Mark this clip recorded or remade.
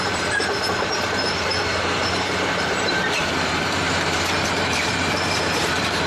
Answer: remade